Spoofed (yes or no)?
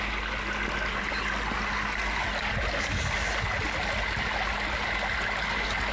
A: no